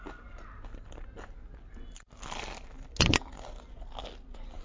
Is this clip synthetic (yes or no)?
no